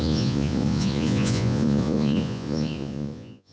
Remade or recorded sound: remade